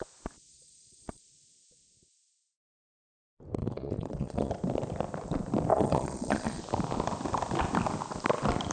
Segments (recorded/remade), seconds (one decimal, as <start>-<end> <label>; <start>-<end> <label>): 0.0-0.5 recorded; 0.5-1.2 remade; 1.2-3.6 recorded; 3.6-4.5 remade; 4.5-5.7 recorded; 5.7-6.6 remade; 6.6-8.7 recorded